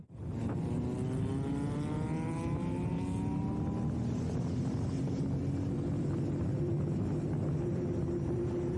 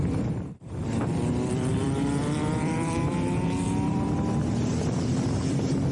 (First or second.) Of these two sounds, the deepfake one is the second